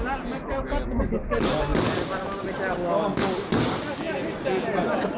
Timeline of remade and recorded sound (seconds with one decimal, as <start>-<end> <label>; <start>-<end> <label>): 0.0-5.2 recorded